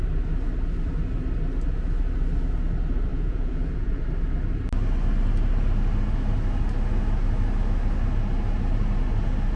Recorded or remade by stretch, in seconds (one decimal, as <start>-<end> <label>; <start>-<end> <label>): 0.0-3.1 recorded; 3.1-4.0 remade; 4.0-9.6 recorded